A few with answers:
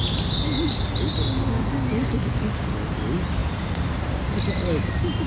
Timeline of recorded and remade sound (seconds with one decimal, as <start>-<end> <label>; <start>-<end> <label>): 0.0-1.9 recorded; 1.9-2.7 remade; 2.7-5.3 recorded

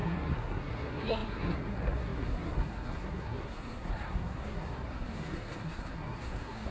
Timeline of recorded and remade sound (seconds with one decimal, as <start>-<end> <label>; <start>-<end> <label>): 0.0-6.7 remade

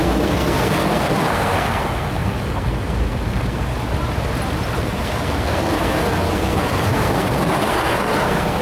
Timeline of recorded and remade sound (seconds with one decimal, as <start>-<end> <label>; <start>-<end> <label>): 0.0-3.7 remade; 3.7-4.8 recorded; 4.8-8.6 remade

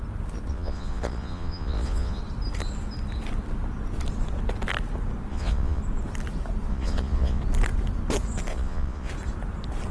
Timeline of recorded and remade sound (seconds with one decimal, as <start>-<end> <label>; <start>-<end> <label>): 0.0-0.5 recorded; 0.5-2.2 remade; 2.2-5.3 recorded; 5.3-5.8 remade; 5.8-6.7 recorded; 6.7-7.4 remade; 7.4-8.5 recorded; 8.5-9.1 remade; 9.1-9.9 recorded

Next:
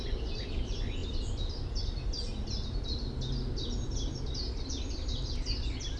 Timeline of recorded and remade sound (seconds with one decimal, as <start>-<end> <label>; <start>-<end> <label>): 0.0-6.0 recorded

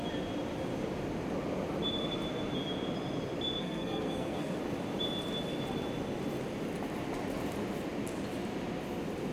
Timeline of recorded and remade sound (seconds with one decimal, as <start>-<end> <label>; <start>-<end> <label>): 0.0-3.6 recorded; 3.6-4.6 remade; 4.6-9.3 recorded

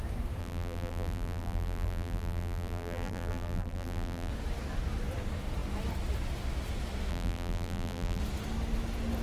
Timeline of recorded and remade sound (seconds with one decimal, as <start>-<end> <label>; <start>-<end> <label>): 0.0-0.4 recorded; 0.4-4.3 remade; 4.3-7.1 recorded; 7.1-8.2 remade; 8.2-9.2 recorded